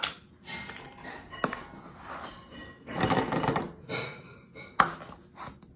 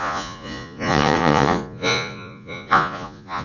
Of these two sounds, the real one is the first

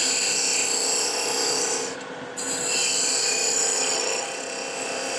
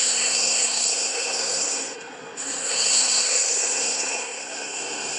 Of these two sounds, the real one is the first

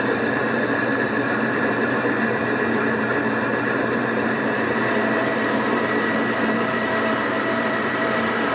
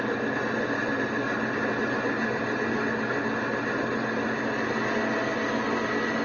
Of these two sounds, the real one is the second